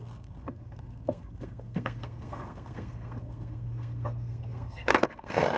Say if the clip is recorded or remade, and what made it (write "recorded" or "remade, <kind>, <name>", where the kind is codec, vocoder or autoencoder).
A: remade, codec, SNAC